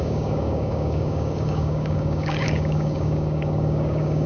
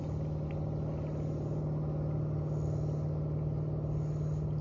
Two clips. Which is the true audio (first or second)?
second